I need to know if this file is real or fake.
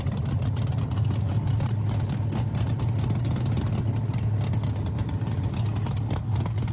real